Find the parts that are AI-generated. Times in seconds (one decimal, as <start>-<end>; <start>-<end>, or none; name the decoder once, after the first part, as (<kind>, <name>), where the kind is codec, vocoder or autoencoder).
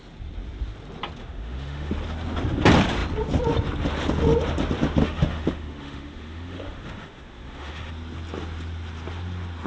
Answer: 1.2-1.9 (autoencoder, DAC-VAE); 5.0-7.9